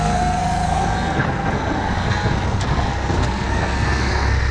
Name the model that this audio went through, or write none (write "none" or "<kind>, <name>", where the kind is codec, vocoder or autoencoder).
codec, SNAC